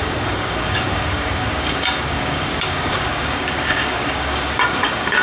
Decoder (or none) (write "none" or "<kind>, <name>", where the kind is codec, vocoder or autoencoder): codec, DAC